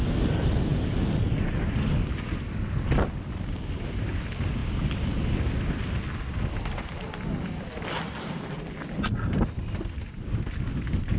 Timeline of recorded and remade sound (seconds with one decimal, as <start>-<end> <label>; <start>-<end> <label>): 0.0-11.2 recorded